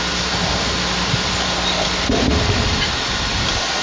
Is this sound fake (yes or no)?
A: yes